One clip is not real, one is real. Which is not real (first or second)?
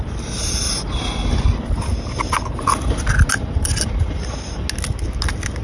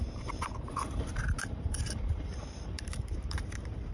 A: second